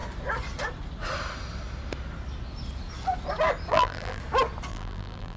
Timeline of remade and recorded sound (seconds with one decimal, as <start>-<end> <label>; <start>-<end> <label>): 0.0-3.7 recorded; 3.7-4.2 remade; 4.2-4.7 recorded; 4.7-5.4 remade